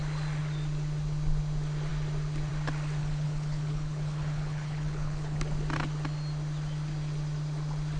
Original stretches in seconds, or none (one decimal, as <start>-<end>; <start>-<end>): 0.0-3.0; 5.4-8.0